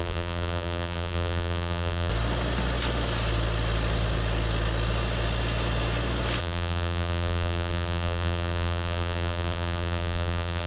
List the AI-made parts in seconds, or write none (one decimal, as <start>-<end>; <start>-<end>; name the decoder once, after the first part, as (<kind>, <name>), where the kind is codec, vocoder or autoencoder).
0.0-2.1 (vocoder, BigVGAN v2); 6.4-10.7